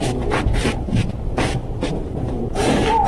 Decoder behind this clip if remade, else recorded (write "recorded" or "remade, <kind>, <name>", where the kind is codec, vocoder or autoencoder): remade, vocoder, BigVGAN v2